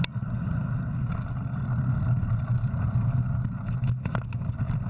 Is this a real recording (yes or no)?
yes